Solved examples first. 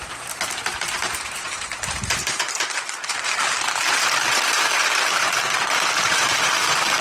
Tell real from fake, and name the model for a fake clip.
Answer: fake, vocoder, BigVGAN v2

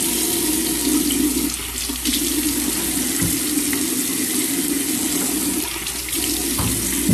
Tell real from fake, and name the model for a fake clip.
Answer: real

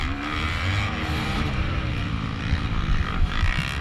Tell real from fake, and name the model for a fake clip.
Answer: real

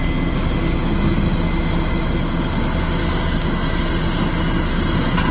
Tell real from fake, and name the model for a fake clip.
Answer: real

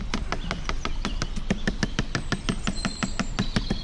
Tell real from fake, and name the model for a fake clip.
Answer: real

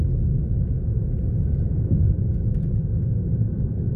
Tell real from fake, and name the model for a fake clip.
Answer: real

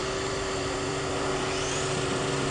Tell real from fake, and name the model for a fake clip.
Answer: fake, vocoder, BigVGAN v2